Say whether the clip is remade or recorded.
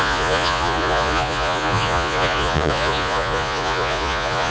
remade